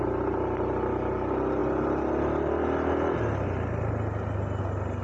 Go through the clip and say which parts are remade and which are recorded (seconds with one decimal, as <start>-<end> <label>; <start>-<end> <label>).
0.0-5.0 recorded